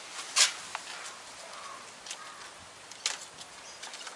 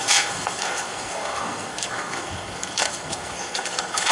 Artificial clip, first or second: second